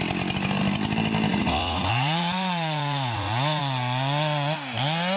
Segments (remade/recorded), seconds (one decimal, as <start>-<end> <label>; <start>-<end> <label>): 0.0-1.3 recorded; 1.3-3.6 remade; 3.6-5.2 recorded

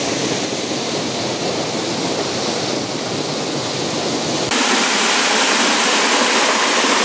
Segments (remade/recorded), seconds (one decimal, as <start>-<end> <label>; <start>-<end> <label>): 0.0-3.3 recorded; 3.3-4.5 remade; 4.5-7.0 recorded